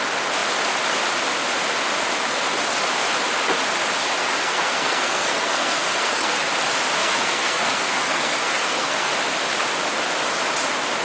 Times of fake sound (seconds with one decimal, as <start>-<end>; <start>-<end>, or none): 4.2-6.5; 7.0-9.1